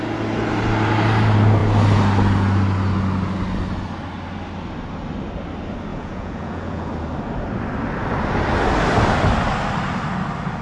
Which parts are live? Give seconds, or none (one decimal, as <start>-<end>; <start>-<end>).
0.0-5.9; 6.9-10.6